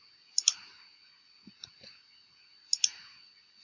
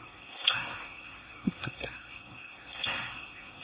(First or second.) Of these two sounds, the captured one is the first